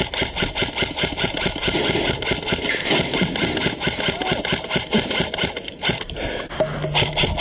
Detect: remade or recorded recorded